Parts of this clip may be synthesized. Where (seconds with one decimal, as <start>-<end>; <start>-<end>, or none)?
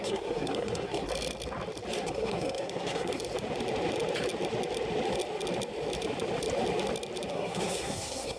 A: 0.0-1.1; 2.0-3.1; 7.3-8.4